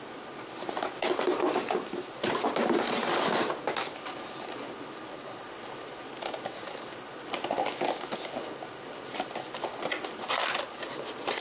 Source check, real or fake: real